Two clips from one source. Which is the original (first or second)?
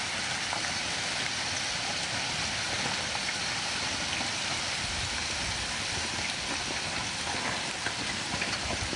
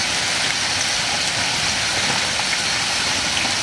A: second